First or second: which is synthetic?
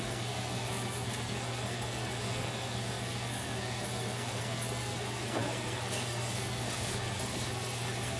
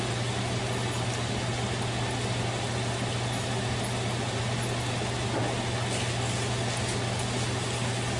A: first